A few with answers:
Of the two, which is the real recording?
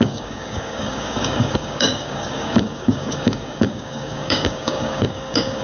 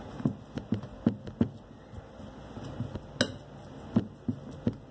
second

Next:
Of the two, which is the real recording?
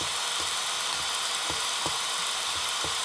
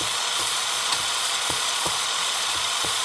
first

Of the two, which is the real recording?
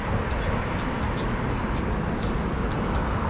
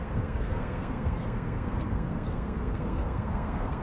first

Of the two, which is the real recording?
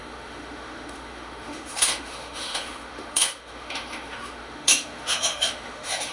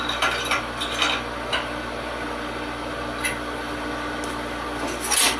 second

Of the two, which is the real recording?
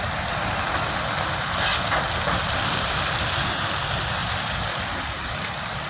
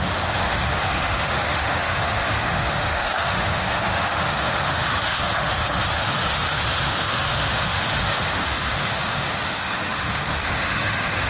first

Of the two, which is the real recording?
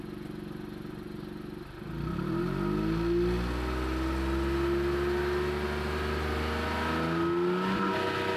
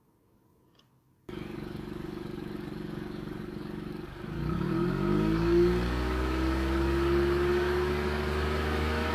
first